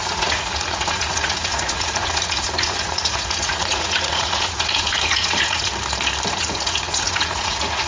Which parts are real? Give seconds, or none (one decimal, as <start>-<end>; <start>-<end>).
5.7-6.3